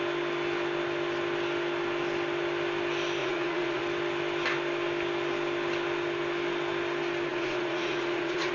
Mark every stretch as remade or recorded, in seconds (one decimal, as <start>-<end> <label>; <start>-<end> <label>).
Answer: 0.0-3.2 recorded; 3.2-3.8 remade; 3.8-7.3 recorded; 7.3-8.5 remade

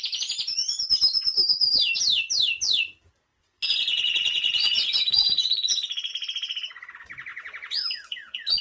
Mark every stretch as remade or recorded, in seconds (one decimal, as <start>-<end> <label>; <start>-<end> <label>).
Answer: 0.0-3.3 recorded; 3.3-6.1 remade; 6.1-8.6 recorded

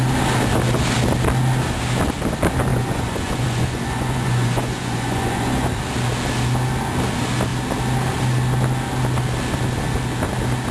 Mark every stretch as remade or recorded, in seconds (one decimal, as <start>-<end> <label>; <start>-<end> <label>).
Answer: 0.0-2.7 recorded; 2.7-5.7 remade; 5.7-10.7 recorded

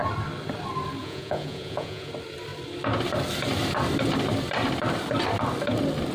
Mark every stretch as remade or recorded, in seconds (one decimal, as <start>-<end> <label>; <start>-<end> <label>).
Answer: 0.0-1.0 recorded; 1.0-2.1 remade; 2.1-6.1 recorded

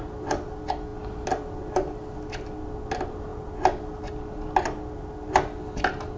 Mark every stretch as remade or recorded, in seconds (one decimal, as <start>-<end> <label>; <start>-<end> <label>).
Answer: 0.0-6.2 recorded

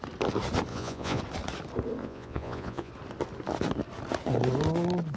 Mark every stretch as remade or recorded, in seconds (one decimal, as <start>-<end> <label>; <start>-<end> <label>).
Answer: 0.0-0.7 recorded; 0.7-1.2 remade; 1.2-2.0 recorded; 2.0-2.9 remade; 2.9-5.2 recorded

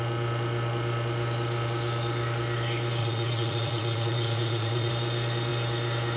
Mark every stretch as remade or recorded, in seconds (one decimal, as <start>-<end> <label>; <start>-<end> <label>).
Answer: 0.0-3.0 recorded; 3.0-4.9 remade; 4.9-6.2 recorded

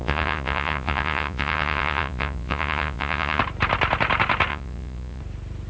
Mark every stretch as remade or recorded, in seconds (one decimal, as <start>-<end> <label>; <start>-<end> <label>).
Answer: 0.0-3.4 remade; 3.4-4.5 recorded; 4.5-5.2 remade; 5.2-5.7 recorded